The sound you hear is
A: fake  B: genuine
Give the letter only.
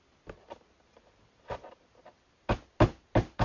B